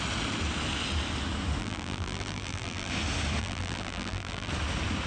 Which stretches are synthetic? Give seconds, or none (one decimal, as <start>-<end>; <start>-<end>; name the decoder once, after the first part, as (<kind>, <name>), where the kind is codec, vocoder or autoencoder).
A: 1.6-2.9 (vocoder, BigVGAN v2); 3.4-4.5